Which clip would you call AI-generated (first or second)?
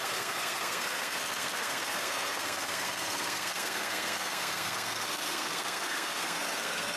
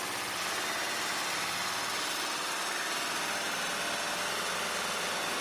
first